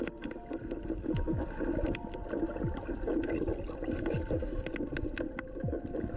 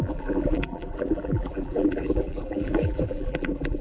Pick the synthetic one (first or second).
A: second